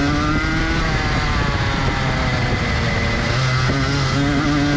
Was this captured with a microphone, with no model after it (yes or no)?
yes